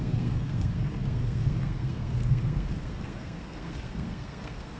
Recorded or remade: remade